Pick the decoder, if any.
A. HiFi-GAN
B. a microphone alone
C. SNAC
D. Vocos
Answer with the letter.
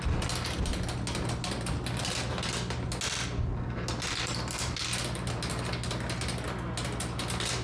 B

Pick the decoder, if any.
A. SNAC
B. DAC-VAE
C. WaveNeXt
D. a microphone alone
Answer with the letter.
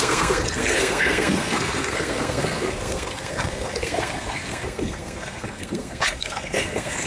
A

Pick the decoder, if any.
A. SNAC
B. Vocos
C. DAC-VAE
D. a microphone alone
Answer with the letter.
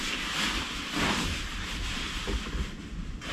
D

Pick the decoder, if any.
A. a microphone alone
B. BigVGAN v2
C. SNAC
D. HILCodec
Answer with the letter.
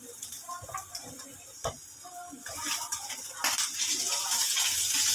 A